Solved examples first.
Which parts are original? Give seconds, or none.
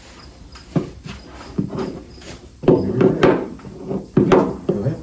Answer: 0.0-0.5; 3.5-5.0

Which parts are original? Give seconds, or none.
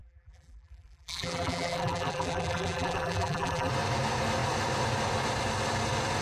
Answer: 3.7-6.2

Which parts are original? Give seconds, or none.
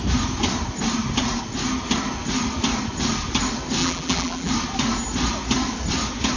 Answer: 0.0-3.8; 4.5-6.4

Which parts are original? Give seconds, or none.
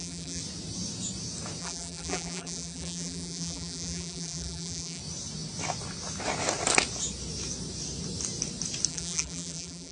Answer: 0.4-1.6; 5.0-8.9